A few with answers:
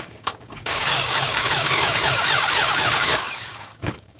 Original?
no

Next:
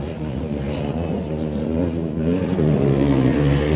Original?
no